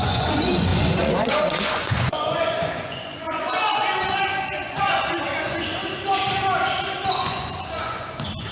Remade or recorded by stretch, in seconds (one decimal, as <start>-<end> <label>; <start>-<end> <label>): 0.0-5.8 remade; 5.8-7.0 recorded; 7.0-8.5 remade